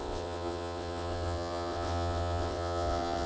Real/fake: fake